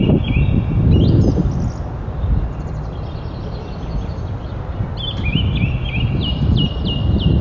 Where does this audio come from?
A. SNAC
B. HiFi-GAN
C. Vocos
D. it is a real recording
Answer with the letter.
D